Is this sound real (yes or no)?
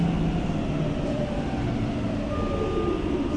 yes